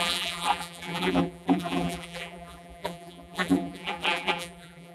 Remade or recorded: remade